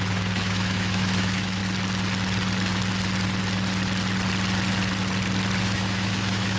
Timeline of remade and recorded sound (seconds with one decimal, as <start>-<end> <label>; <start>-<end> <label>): 0.0-1.6 remade; 1.6-5.6 recorded; 5.6-6.6 remade